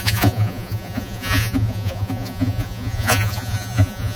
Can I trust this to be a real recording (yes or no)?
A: no